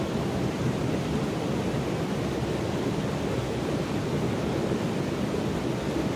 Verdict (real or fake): real